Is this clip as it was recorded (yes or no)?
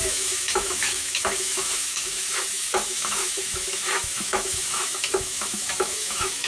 no